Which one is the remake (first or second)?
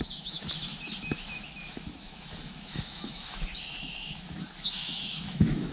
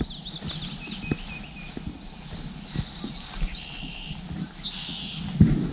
first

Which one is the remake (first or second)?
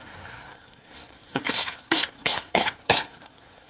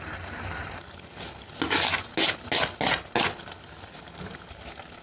first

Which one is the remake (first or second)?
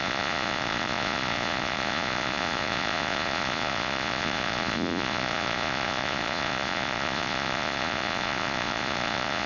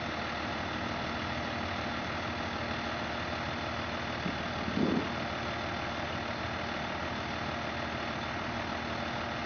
first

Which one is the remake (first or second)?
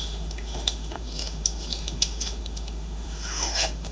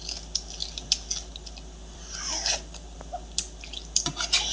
first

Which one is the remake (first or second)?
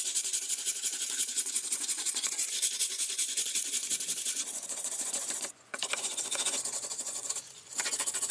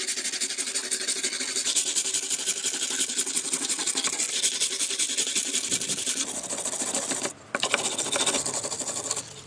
first